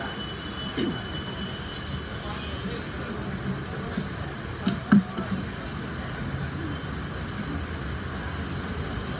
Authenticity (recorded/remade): recorded